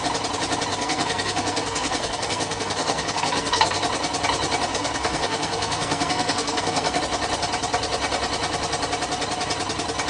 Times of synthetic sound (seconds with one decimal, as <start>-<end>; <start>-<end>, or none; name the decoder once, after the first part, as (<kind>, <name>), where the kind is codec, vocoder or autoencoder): 0.7-3.8 (codec, SNAC); 4.7-7.0